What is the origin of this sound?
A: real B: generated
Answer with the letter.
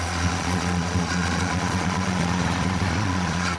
B